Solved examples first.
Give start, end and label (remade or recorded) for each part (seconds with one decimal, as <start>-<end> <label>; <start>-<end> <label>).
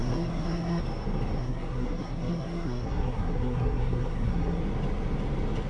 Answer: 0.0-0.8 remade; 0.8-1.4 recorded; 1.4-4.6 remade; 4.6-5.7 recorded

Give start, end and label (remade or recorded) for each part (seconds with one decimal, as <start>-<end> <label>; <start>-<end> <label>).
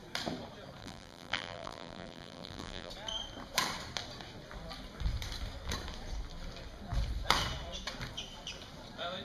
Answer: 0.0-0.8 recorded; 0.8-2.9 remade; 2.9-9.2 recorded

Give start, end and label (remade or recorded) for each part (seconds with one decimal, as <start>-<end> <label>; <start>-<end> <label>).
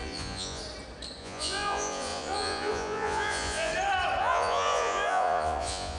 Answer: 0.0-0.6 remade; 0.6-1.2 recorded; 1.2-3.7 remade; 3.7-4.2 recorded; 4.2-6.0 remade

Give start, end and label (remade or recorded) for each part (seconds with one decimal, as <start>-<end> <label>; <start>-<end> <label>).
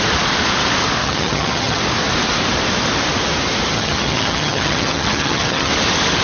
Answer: 0.0-1.0 recorded; 1.0-1.8 remade; 1.8-3.7 recorded; 3.7-5.7 remade; 5.7-6.2 recorded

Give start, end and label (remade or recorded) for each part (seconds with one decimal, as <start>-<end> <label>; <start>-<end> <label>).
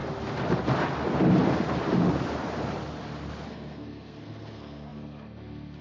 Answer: 0.0-3.5 recorded; 3.5-5.8 remade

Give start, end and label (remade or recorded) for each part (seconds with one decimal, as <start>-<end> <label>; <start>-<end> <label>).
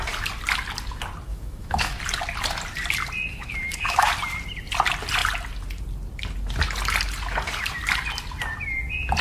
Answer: 0.0-1.3 recorded; 1.3-2.0 remade; 2.0-3.3 recorded; 3.3-4.1 remade; 4.1-9.2 recorded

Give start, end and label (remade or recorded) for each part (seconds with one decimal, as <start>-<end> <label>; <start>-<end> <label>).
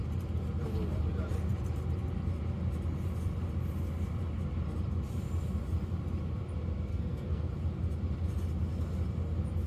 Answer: 0.0-6.9 recorded; 6.9-7.5 remade; 7.5-9.7 recorded